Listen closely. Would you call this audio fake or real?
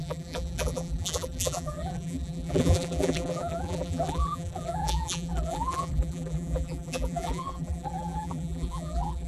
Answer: fake